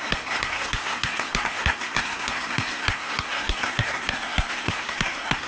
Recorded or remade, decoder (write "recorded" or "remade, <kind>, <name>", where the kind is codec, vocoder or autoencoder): remade, codec, SNAC